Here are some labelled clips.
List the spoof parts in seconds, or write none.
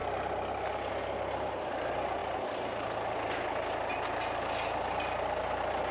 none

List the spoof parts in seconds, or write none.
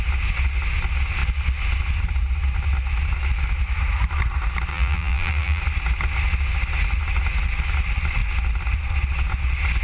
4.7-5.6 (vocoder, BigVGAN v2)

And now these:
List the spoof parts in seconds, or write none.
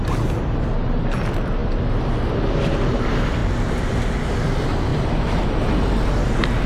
4.9-5.6 (vocoder, BigVGAN v2)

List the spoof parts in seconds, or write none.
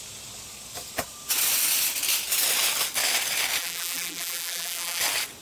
3.6-5.0 (vocoder, BigVGAN v2)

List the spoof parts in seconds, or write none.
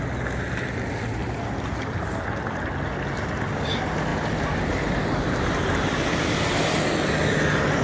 1.2-2.1 (vocoder, BigVGAN v2); 4.1-6.8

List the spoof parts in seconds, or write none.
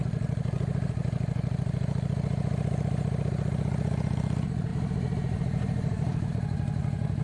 4.7-6.3 (vocoder, BigVGAN v2)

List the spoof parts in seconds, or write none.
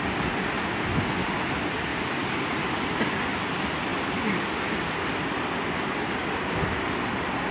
0.0-1.9 (vocoder, BigVGAN v2); 2.6-7.5